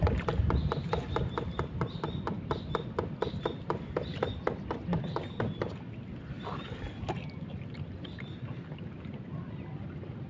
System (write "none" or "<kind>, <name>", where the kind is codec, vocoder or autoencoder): none